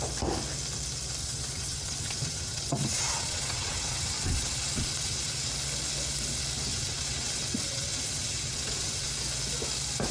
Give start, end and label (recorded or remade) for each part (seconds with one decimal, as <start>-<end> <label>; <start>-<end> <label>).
0.0-1.2 recorded; 1.2-5.5 remade; 5.5-6.7 recorded; 6.7-9.1 remade; 9.1-10.1 recorded